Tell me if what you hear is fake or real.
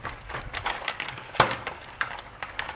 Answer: fake